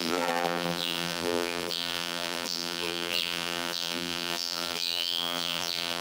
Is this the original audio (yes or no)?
no